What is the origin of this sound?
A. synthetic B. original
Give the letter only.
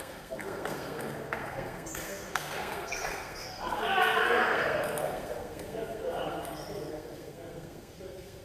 A